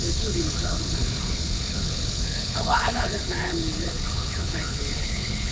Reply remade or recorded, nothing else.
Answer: remade